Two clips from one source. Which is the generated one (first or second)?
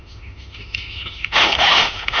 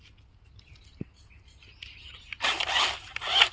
first